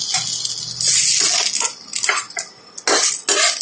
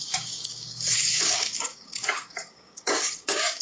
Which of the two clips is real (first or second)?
first